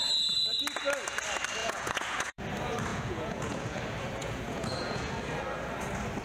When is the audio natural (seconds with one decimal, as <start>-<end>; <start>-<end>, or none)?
0.0-1.6; 2.4-2.9; 3.8-4.2; 5.1-6.2